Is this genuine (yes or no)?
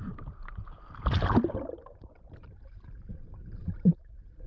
no